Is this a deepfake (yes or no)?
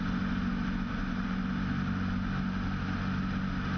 no